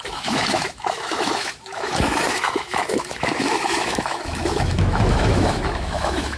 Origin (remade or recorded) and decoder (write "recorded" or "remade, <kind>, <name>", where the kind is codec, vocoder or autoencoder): remade, autoencoder, DAC-VAE